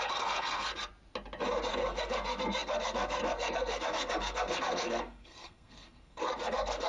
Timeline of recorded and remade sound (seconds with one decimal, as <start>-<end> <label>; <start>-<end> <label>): 0.0-0.7 remade; 0.7-1.7 recorded; 1.7-6.9 remade

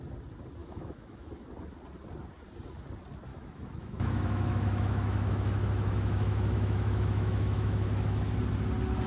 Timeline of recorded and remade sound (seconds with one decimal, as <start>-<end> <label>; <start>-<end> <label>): 0.0-0.6 recorded; 0.6-1.3 remade; 1.3-3.3 recorded; 3.3-8.4 remade; 8.4-9.1 recorded

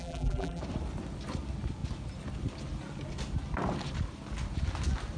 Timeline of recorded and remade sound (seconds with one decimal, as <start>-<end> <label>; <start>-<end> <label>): 0.0-0.6 remade; 0.6-5.2 recorded